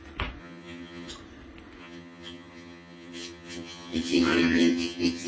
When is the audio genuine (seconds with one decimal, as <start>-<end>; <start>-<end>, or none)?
0.0-0.4; 1.1-1.8